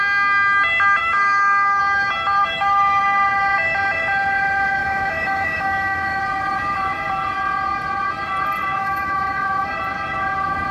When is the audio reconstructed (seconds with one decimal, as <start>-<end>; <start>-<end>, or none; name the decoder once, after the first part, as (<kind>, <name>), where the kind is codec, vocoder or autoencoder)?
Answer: 1.0-1.8 (autoencoder, DAC-VAE); 2.4-3.0; 4.8-6.2; 8.8-9.7